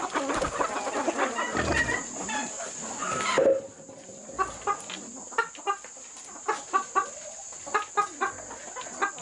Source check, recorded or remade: recorded